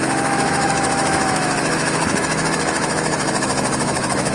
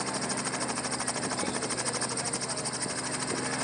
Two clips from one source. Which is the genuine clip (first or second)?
second